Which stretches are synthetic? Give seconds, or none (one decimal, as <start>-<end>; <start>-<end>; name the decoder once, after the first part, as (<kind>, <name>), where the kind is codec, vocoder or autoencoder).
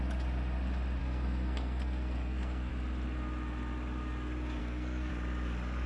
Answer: 1.0-2.7 (codec, SNAC); 4.6-5.1